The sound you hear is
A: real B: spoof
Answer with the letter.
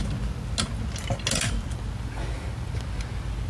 A